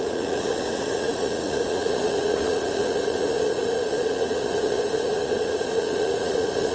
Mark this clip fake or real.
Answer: fake